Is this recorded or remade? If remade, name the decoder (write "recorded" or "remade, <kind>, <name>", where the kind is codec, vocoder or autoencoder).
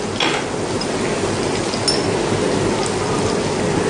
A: recorded